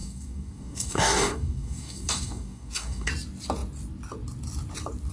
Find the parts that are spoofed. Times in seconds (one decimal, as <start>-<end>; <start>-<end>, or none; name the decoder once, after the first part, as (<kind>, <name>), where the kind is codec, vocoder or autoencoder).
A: 0.0-3.1 (codec, DAC)